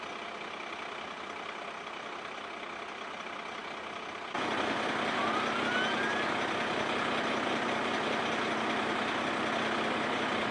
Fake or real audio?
real